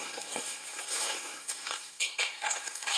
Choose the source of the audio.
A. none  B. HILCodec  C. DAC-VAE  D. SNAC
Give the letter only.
D